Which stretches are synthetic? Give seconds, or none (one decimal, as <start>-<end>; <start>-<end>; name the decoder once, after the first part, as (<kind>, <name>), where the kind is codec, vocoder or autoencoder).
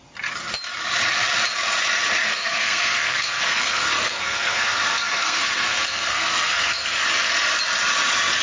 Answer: 2.2-7.0 (codec, SNAC)